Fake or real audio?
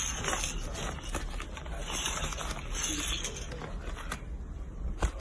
real